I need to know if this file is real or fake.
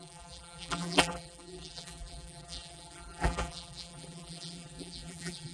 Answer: fake